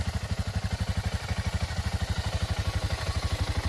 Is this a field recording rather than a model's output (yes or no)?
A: yes